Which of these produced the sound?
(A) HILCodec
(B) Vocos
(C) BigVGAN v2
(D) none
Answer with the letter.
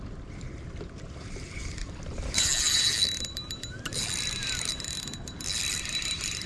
C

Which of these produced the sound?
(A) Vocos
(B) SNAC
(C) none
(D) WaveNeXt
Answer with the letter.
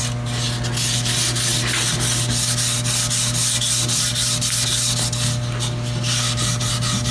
C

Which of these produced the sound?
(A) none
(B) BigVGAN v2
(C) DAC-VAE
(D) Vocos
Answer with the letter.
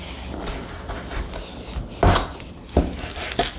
A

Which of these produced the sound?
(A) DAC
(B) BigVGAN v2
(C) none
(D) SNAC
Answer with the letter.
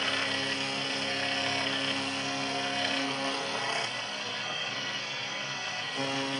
D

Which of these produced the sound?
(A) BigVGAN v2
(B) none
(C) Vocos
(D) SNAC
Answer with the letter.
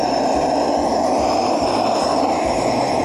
A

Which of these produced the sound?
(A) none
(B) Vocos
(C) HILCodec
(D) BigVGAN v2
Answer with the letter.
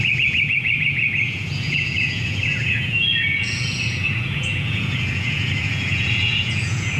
B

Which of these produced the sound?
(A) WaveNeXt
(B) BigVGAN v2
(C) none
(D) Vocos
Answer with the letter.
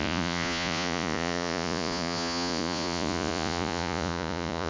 D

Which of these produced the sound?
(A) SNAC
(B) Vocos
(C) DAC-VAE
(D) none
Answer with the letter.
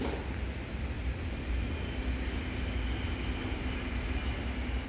D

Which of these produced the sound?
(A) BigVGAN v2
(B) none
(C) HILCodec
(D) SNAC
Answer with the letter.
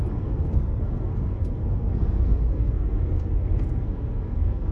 D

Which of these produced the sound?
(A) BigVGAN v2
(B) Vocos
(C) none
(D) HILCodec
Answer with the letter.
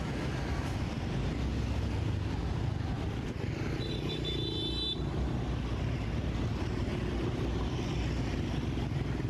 C